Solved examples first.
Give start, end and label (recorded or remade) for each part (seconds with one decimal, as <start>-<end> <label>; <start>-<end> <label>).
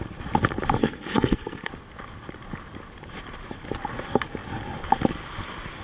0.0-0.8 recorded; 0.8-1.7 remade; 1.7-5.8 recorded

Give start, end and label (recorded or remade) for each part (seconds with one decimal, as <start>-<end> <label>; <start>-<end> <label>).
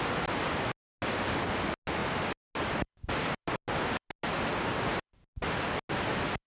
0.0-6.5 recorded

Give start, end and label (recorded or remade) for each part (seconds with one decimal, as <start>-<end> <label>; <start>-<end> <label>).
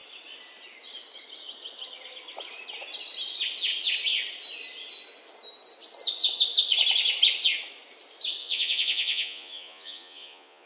0.0-8.4 recorded; 8.4-10.7 remade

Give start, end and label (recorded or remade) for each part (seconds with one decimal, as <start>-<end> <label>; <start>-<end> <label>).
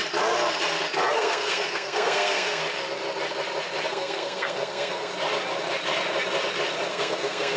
0.0-1.1 recorded; 1.1-2.6 remade; 2.6-3.9 recorded; 3.9-5.1 remade; 5.1-6.9 recorded; 6.9-7.6 remade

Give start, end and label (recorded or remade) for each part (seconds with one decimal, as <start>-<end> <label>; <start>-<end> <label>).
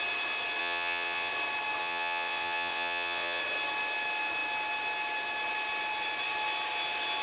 0.0-0.6 recorded; 0.6-1.3 remade; 1.3-1.8 recorded; 1.8-3.4 remade; 3.4-7.2 recorded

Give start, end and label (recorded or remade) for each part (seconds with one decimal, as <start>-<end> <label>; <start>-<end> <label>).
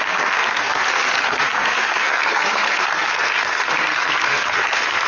0.0-5.1 remade